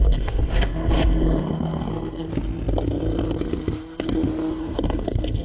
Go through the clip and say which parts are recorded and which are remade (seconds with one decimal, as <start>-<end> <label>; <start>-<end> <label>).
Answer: 0.0-2.3 remade; 2.3-4.5 recorded; 4.5-5.4 remade